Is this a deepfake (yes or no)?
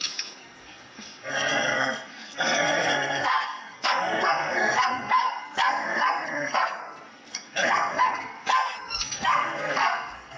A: yes